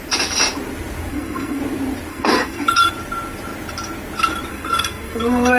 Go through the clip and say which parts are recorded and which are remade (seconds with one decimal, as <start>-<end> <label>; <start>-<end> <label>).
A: 0.0-1.1 recorded; 1.1-1.6 remade; 1.6-2.1 recorded; 2.1-2.9 remade; 2.9-4.5 recorded; 4.5-5.6 remade